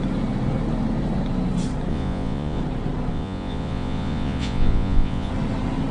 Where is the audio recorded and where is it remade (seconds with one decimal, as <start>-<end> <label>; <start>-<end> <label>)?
0.0-1.9 recorded; 1.9-2.6 remade; 2.6-3.1 recorded; 3.1-5.3 remade; 5.3-5.9 recorded